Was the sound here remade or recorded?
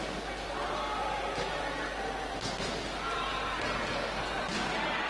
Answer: recorded